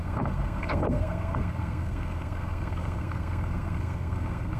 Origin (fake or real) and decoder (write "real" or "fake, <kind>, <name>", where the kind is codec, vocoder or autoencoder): fake, codec, SNAC